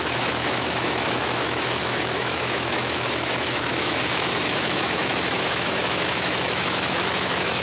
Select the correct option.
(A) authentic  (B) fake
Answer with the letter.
B